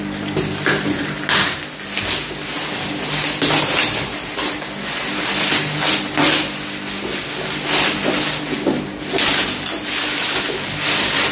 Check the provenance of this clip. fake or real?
real